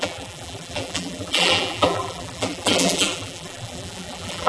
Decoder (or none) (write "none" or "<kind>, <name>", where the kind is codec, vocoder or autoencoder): vocoder, BigVGAN v2